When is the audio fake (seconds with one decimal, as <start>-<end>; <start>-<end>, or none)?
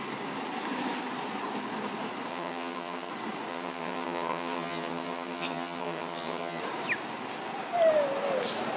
2.3-3.1; 3.5-6.6